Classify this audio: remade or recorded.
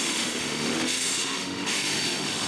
remade